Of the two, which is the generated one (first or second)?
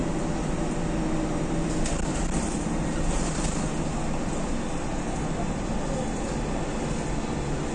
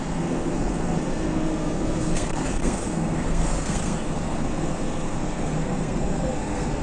second